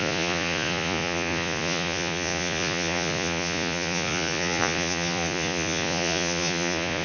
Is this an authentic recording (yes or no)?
no